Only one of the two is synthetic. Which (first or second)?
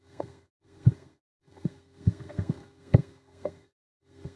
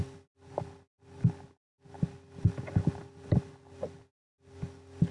first